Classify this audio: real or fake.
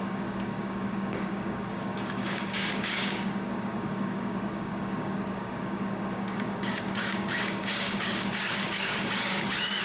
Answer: fake